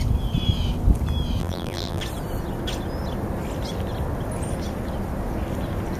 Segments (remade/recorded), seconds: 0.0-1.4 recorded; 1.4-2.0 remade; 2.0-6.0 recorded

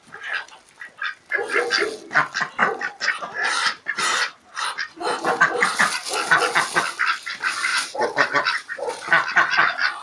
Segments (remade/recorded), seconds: 0.0-2.6 recorded; 2.6-4.4 remade; 4.4-7.7 recorded; 7.7-8.9 remade; 8.9-10.0 recorded

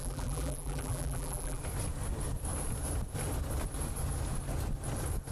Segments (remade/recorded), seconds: 0.0-1.6 remade; 1.6-5.3 recorded

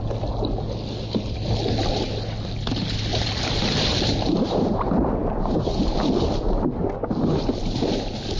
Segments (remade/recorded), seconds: 0.0-3.1 recorded; 3.1-4.7 remade; 4.7-8.4 recorded